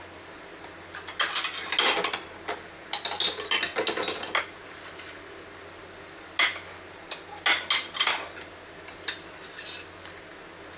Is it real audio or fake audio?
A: real